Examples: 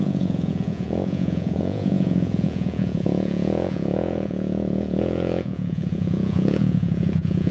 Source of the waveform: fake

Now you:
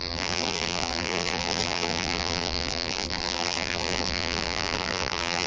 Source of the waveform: fake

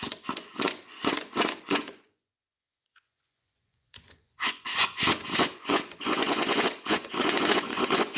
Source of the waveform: fake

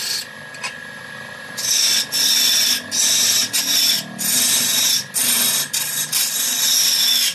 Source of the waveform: real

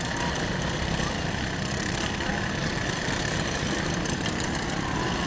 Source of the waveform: fake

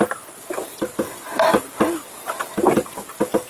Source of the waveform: real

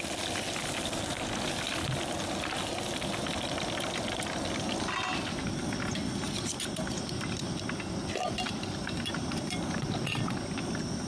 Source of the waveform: real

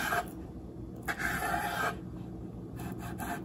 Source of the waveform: real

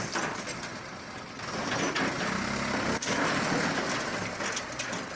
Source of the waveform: real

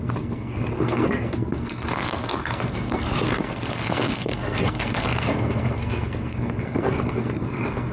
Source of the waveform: fake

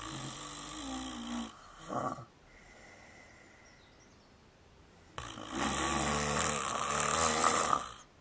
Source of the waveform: real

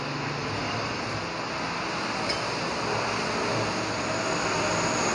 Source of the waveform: real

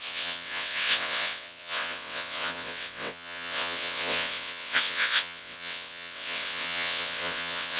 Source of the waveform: fake